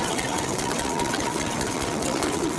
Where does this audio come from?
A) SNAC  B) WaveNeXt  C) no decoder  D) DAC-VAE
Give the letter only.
B